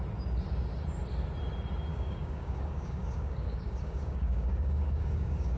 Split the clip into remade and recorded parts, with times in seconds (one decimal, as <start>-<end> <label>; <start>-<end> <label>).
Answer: 0.0-1.9 recorded; 1.9-5.6 remade